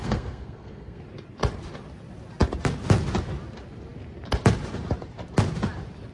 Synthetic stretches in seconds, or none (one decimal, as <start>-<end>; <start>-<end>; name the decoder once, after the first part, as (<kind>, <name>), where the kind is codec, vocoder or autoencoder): 0.0-1.0 (codec, SNAC)